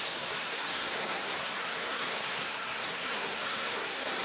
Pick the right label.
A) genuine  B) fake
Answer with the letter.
B